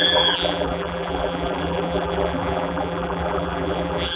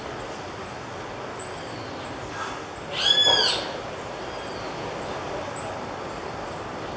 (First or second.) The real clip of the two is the second